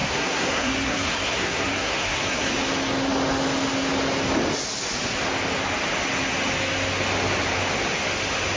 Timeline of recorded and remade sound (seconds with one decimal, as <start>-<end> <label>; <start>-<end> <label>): 0.0-2.5 remade; 2.5-8.6 recorded